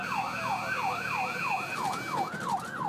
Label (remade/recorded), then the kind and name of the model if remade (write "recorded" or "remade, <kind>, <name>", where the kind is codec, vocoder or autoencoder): recorded